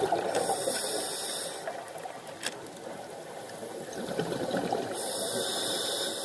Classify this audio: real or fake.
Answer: fake